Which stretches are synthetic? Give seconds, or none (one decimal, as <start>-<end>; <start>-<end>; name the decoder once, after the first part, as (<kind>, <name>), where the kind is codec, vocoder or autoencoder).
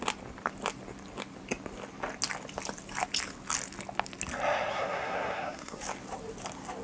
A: 4.7-5.8 (codec, SNAC)